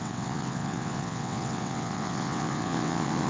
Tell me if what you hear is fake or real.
fake